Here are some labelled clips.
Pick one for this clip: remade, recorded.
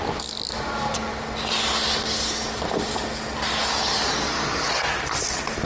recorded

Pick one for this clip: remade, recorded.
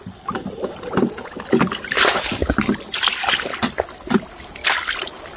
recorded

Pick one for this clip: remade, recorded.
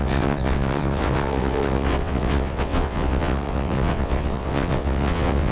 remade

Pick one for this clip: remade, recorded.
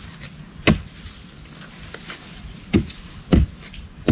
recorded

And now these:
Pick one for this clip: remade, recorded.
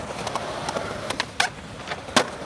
recorded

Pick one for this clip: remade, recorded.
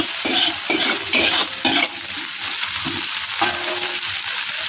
remade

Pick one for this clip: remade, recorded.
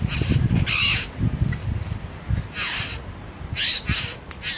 recorded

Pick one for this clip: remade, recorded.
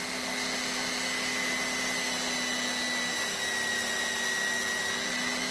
recorded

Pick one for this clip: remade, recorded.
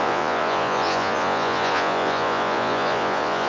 remade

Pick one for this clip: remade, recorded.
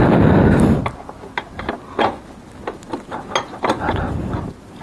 recorded